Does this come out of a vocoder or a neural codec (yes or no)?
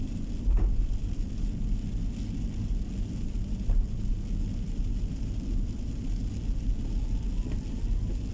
no